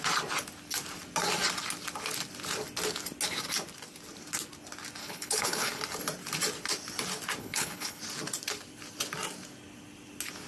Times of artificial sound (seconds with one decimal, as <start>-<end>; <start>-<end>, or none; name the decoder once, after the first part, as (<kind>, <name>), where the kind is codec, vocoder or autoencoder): 5.0-5.8 (codec, HILCodec); 7.4-8.0